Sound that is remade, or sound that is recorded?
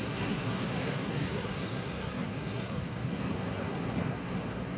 remade